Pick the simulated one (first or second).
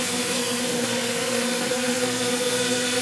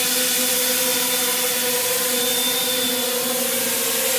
first